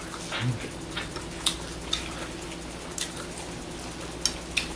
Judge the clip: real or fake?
real